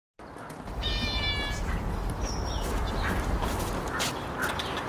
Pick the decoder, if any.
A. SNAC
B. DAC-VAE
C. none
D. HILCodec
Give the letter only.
C